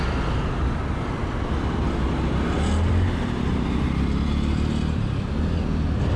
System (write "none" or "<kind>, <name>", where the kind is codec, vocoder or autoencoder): none